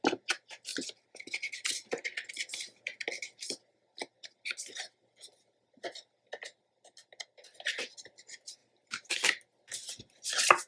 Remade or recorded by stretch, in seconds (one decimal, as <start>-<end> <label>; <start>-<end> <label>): 0.0-0.7 recorded; 0.7-2.3 remade; 2.3-10.7 recorded